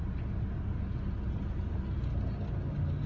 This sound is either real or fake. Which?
real